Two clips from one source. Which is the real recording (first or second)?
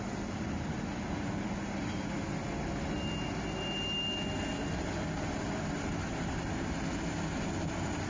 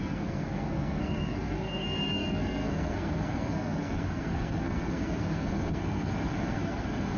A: first